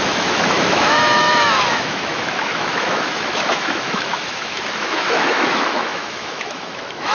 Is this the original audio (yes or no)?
no